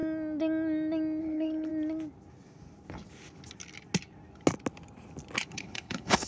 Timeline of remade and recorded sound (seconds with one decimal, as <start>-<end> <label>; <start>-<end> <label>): 0.0-1.2 recorded; 1.2-1.7 remade; 1.7-5.5 recorded; 5.5-6.3 remade